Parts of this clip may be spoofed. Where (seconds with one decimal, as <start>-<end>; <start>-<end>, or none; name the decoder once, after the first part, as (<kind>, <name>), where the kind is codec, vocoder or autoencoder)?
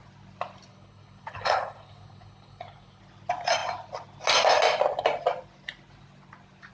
0.7-3.0 (codec, HILCodec)